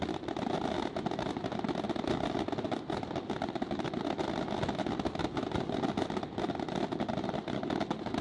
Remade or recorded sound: recorded